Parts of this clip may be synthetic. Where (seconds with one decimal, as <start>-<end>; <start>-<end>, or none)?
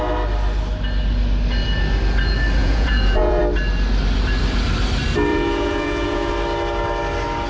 2.6-3.4; 5.3-6.3